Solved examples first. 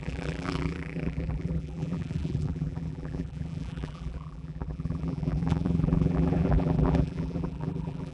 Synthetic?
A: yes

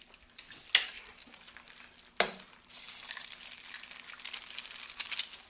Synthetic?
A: no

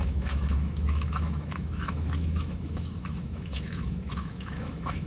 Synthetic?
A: yes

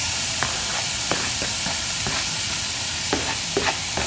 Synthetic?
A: no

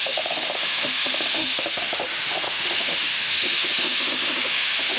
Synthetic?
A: yes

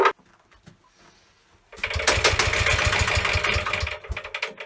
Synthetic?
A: no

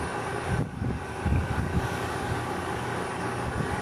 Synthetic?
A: yes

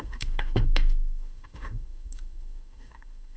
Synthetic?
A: yes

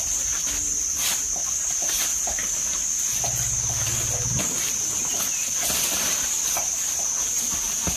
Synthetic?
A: no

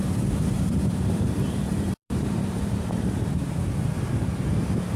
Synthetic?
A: yes